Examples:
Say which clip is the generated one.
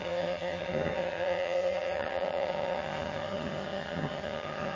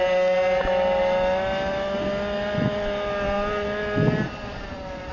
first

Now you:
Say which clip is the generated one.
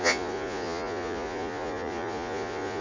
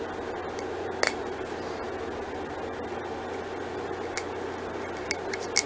first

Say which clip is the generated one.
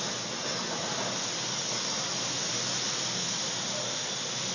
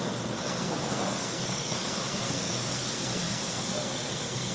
second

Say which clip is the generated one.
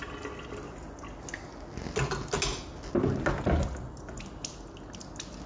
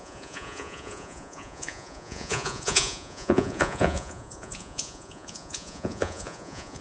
second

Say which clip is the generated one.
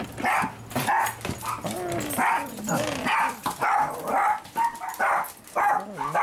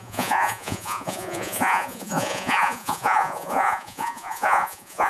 second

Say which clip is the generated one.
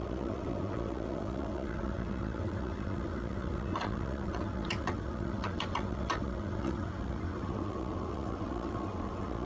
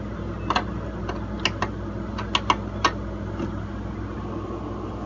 first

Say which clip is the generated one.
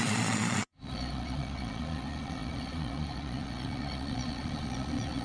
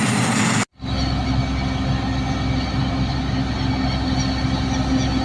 first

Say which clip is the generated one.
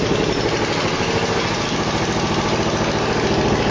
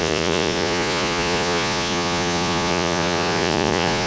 second